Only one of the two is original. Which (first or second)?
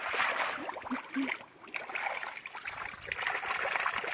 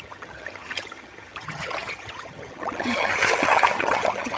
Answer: first